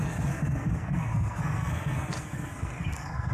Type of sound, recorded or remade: remade